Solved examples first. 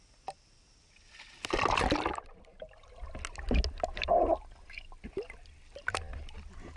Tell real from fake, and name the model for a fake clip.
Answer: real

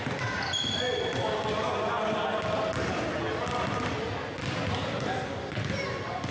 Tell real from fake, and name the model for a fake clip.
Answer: real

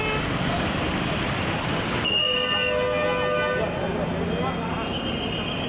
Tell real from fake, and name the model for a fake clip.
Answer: real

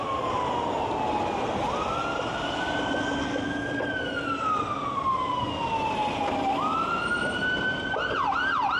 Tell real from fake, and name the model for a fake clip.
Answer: real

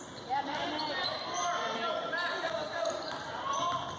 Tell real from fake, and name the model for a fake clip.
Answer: real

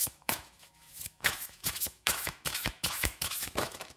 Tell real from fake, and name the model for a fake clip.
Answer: fake, autoencoder, DAC-VAE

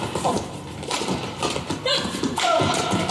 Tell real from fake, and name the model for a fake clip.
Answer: fake, vocoder, BigVGAN v2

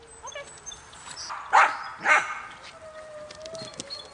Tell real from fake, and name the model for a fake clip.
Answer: real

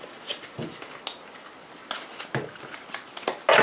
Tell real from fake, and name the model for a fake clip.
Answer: real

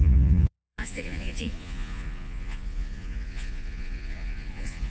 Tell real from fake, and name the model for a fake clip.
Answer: fake, vocoder, Vocos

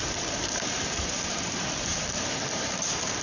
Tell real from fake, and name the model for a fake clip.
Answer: fake, vocoder, BigVGAN v2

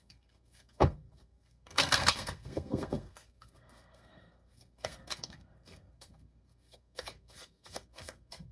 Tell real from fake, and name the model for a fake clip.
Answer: fake, codec, SNAC